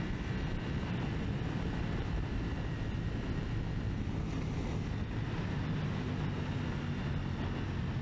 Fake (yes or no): no